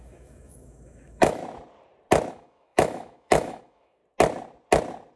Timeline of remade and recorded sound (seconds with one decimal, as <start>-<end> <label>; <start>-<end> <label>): 0.0-1.4 remade; 1.4-2.3 recorded; 2.3-4.0 remade; 4.0-5.2 recorded